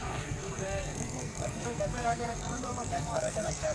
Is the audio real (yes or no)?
no